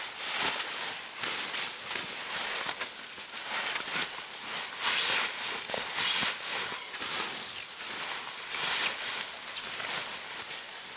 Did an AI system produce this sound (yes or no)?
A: no